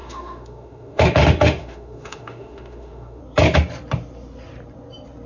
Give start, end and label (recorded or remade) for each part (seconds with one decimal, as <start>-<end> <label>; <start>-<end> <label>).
0.0-3.2 remade; 3.2-5.3 recorded